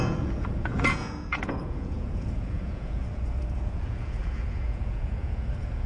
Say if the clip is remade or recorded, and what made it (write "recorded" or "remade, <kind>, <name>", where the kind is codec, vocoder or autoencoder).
remade, vocoder, Vocos